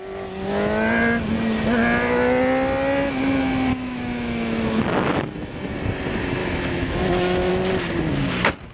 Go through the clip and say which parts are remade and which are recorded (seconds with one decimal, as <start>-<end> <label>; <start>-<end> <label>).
0.0-3.7 recorded; 3.7-4.8 remade; 4.8-6.4 recorded; 6.4-7.5 remade; 7.5-8.7 recorded